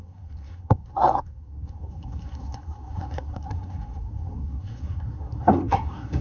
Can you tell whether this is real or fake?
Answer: fake